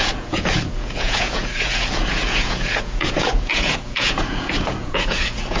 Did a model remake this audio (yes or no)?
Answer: yes